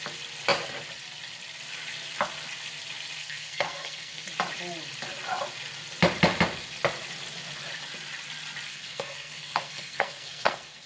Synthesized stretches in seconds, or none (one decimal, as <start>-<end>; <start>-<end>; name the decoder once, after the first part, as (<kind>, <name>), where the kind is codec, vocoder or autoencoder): 3.2-4.3 (codec, SNAC); 8.7-10.9